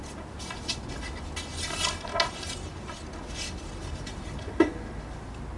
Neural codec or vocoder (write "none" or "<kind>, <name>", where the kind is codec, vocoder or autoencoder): none